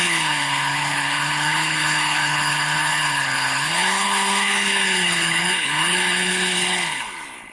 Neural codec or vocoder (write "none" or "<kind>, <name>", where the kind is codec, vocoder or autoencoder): codec, HILCodec